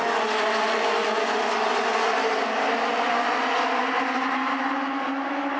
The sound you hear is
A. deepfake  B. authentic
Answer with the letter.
B